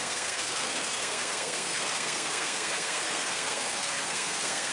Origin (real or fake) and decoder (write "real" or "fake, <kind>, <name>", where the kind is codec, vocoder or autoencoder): fake, codec, SNAC